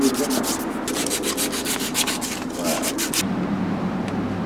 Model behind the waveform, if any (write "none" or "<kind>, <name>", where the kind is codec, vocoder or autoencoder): none